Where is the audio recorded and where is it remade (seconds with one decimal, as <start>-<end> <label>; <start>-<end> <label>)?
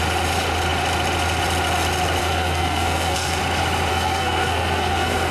0.0-2.2 recorded; 2.2-3.4 remade; 3.4-3.9 recorded; 3.9-5.3 remade